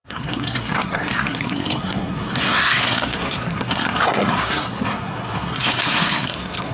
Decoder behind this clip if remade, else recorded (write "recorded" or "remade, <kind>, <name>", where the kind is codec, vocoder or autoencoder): remade, codec, SNAC